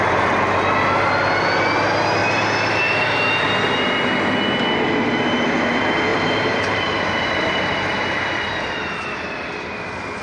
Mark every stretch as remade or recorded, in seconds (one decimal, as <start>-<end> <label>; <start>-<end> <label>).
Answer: 0.0-2.2 recorded; 2.2-3.5 remade; 3.5-6.1 recorded; 6.1-8.0 remade; 8.0-10.2 recorded